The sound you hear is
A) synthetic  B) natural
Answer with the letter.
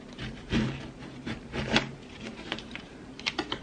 A